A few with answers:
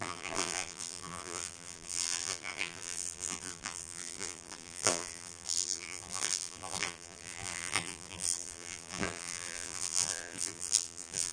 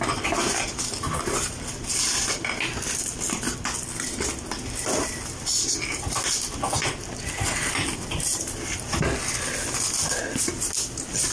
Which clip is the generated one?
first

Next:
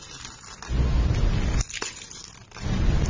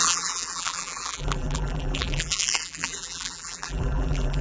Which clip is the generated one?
second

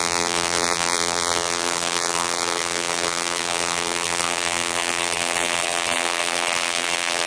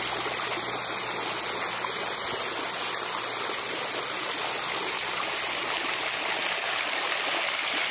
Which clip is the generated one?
first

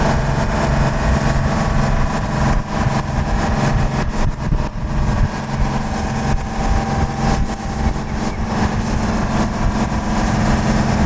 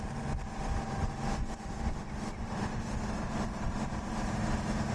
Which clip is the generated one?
second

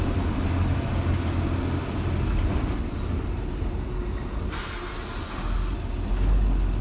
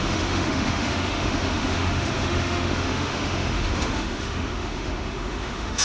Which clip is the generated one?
second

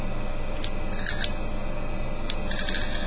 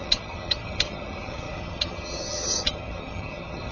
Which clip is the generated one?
second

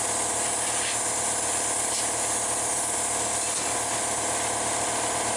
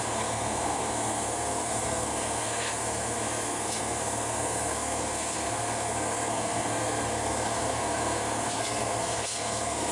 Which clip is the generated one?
second